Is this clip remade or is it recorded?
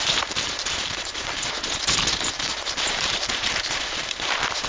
remade